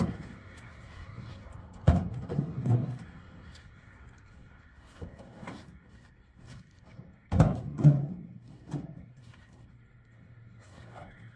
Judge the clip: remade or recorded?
remade